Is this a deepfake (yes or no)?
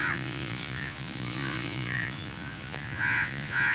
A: yes